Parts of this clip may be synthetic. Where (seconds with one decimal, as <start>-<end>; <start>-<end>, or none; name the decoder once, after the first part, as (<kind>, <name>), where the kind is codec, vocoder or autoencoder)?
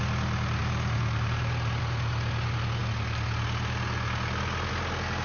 0.6-1.8 (vocoder, BigVGAN v2)